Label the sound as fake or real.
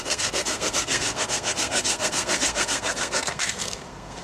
fake